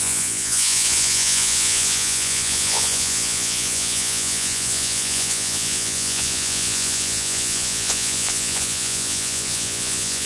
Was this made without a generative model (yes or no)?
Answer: no